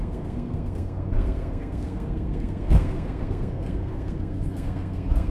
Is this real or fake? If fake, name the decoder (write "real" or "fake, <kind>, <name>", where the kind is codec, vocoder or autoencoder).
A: fake, codec, SNAC